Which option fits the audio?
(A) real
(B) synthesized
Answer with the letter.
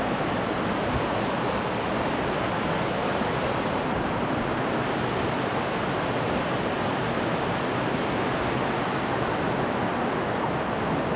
A